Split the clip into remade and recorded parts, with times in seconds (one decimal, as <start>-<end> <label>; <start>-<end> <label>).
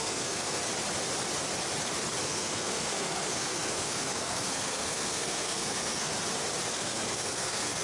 0.0-0.6 remade; 0.6-2.2 recorded; 2.2-6.1 remade; 6.1-6.7 recorded; 6.7-7.8 remade